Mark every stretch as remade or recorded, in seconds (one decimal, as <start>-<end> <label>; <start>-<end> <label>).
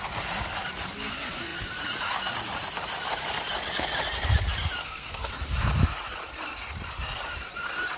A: 0.0-4.8 recorded; 4.8-5.3 remade; 5.3-8.0 recorded